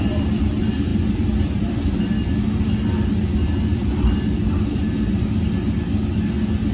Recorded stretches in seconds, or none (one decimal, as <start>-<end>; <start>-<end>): 0.0-0.9; 1.9-6.7